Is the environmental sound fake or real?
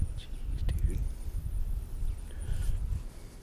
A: real